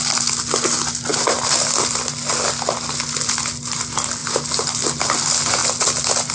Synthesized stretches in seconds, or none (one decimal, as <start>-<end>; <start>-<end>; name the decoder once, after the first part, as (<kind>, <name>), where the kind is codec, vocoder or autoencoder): none